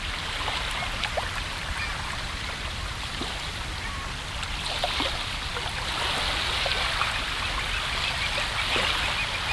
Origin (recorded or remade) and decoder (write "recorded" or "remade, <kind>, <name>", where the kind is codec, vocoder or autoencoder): recorded